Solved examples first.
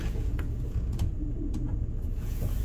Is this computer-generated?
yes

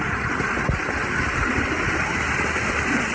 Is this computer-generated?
no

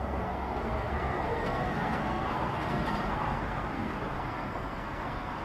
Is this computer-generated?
yes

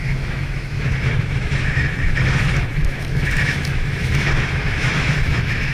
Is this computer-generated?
yes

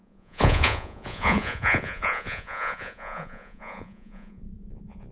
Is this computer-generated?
yes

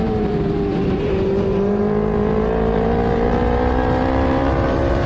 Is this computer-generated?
yes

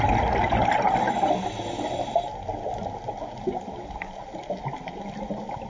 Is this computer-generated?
no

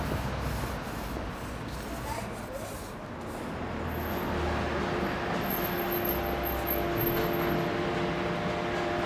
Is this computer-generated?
no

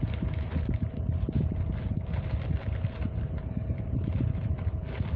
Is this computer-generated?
yes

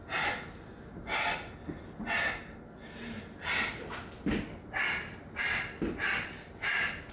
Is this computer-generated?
no